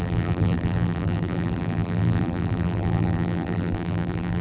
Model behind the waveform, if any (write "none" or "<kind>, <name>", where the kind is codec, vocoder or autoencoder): vocoder, BigVGAN v2